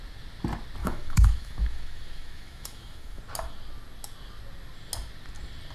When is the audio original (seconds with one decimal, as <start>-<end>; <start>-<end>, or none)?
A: 0.0-0.8; 3.2-5.7